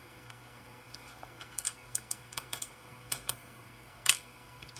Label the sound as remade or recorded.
remade